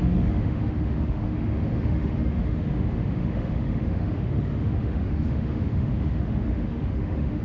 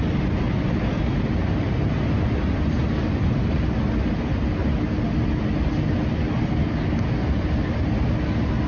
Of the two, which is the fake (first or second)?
first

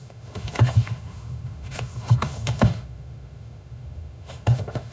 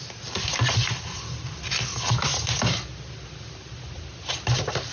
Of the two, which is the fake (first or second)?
first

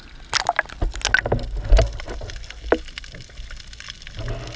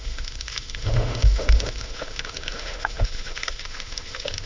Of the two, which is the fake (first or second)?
second